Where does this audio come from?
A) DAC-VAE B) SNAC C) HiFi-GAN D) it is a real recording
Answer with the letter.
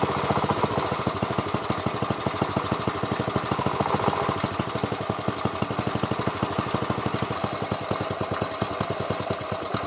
D